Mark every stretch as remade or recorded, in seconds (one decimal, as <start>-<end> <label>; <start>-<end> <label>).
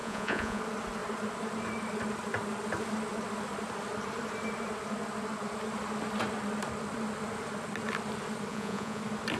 0.0-0.6 remade; 0.6-8.5 recorded; 8.5-9.0 remade; 9.0-9.4 recorded